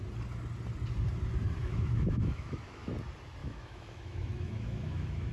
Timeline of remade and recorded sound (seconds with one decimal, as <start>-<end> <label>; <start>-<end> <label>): 0.0-1.6 recorded; 1.6-2.9 remade; 2.9-3.4 recorded; 3.4-5.3 remade